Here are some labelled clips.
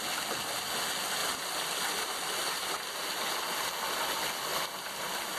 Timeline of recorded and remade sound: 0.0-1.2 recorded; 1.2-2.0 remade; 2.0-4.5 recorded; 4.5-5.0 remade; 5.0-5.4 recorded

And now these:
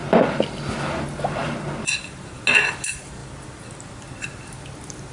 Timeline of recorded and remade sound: 0.0-0.6 remade; 0.6-1.4 recorded; 1.4-2.2 remade; 2.2-5.1 recorded

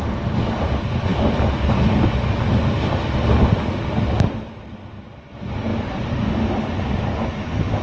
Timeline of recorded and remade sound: 0.0-5.7 recorded; 5.7-6.3 remade; 6.3-7.8 recorded

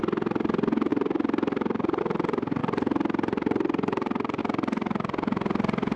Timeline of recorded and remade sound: 0.0-0.9 recorded; 0.9-2.0 remade; 2.0-2.6 recorded; 2.6-4.4 remade; 4.4-6.0 recorded

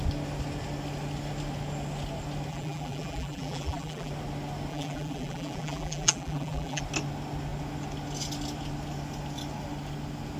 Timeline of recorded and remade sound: 0.0-2.5 recorded; 2.5-4.1 remade; 4.1-4.7 recorded; 4.7-6.8 remade; 6.8-10.4 recorded

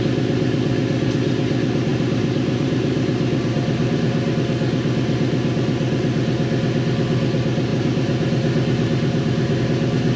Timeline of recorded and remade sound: 0.0-1.9 recorded; 1.9-4.3 remade; 4.3-7.7 recorded; 7.7-9.6 remade; 9.6-10.2 recorded

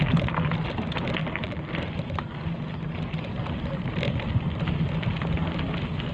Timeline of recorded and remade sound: 0.0-1.2 recorded; 1.2-1.7 remade; 1.7-6.1 recorded